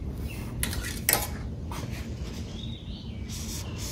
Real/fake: real